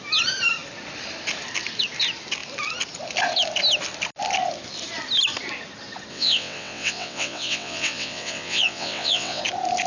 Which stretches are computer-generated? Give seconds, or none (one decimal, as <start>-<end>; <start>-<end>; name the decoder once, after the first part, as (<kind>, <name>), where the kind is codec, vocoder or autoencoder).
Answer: 6.1-9.4 (vocoder, WaveNeXt)